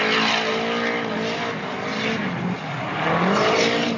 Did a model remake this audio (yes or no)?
no